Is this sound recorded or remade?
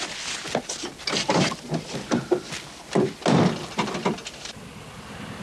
recorded